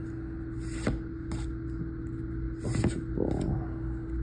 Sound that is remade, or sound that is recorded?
recorded